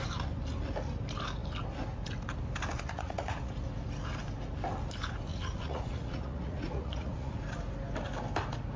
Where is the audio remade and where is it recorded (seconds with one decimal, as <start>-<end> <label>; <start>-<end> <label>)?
0.0-2.7 recorded; 2.7-3.5 remade; 3.5-5.3 recorded; 5.3-7.3 remade; 7.3-8.8 recorded